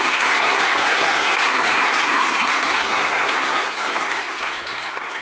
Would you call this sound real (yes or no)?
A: no